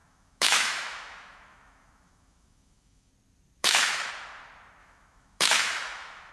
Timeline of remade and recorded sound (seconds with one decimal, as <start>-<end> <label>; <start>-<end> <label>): 0.0-3.1 remade; 3.1-3.6 recorded; 3.6-4.1 remade; 4.1-4.8 recorded; 4.8-6.3 remade